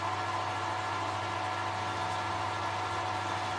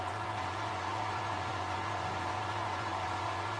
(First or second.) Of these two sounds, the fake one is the second